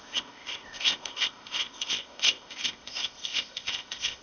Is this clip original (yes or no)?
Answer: no